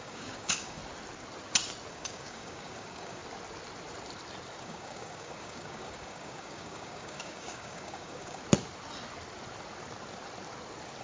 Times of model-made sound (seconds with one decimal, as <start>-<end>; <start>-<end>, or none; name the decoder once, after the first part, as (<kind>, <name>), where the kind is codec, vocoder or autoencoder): 0.0-0.8 (codec, DAC); 1.9-3.2; 4.6-8.4